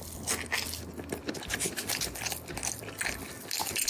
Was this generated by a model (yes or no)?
no